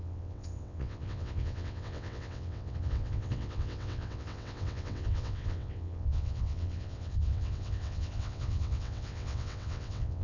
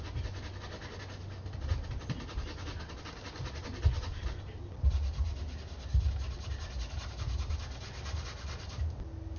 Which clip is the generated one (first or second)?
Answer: first